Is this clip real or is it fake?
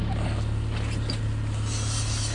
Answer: real